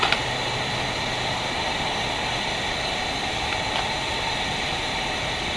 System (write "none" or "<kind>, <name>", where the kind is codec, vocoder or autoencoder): none